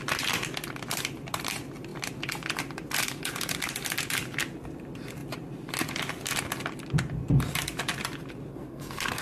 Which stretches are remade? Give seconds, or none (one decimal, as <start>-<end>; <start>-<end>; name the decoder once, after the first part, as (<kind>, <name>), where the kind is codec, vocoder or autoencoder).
8.5-9.2 (codec, SNAC)